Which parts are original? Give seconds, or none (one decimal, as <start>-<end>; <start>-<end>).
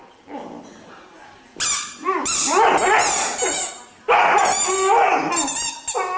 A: 0.0-6.2